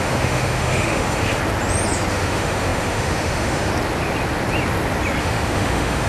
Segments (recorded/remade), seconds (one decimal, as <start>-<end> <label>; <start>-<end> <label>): 0.0-1.4 remade; 1.4-2.1 recorded; 2.1-3.7 remade; 3.7-5.2 recorded; 5.2-6.1 remade